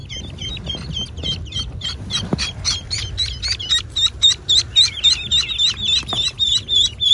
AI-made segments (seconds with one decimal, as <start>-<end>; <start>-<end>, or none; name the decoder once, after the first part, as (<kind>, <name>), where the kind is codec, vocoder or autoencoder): 1.2-5.1 (vocoder, BigVGAN v2)